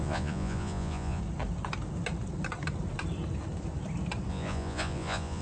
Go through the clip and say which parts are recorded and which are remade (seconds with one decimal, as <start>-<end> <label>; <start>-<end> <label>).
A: 0.0-1.2 remade; 1.2-4.3 recorded; 4.3-5.4 remade